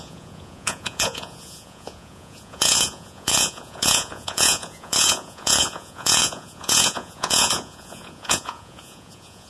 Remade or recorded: remade